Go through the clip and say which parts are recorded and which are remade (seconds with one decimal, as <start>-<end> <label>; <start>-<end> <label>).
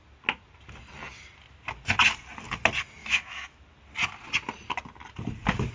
0.0-3.0 recorded; 3.0-3.6 remade; 3.6-5.7 recorded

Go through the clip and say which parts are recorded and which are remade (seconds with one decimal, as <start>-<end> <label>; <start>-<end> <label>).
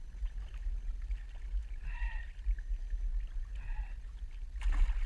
0.0-5.1 recorded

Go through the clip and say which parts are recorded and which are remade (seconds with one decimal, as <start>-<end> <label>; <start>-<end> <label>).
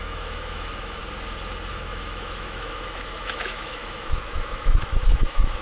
0.0-1.0 remade; 1.0-1.7 recorded; 1.7-5.6 remade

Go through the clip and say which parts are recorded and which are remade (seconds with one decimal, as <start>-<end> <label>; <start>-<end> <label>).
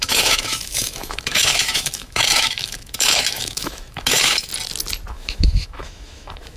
0.0-4.5 remade; 4.5-5.1 recorded; 5.1-6.6 remade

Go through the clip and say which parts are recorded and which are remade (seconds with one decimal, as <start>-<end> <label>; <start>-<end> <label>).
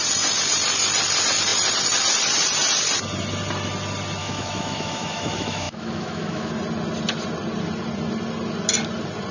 0.0-4.2 recorded; 4.2-6.5 remade; 6.5-9.3 recorded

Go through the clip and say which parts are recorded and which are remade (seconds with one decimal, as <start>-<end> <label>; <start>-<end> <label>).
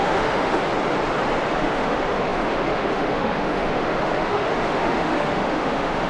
0.0-0.7 remade; 0.7-1.5 recorded; 1.5-6.1 remade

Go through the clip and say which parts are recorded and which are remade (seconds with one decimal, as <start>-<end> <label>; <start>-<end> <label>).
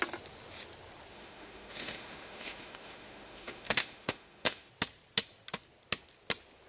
0.0-1.1 recorded; 1.1-4.7 remade; 4.7-6.7 recorded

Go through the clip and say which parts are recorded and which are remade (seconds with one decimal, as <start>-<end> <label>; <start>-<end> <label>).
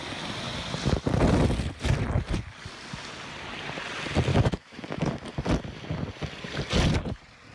0.0-4.3 recorded; 4.3-5.1 remade; 5.1-7.5 recorded